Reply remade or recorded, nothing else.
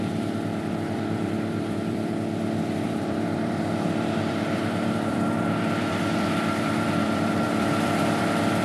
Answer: remade